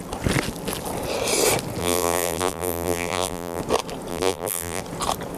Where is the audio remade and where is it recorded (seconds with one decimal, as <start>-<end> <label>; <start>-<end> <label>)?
0.0-1.8 recorded; 1.8-3.6 remade; 3.6-4.1 recorded; 4.1-4.8 remade; 4.8-5.4 recorded